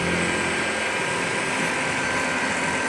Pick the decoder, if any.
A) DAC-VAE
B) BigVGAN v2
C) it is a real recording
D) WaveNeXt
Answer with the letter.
C